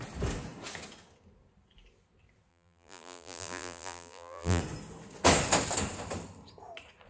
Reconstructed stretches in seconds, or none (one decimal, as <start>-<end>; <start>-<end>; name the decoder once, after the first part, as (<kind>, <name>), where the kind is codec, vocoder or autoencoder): 2.5-4.6 (vocoder, BigVGAN v2)